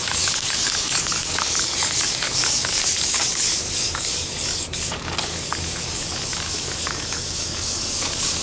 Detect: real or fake fake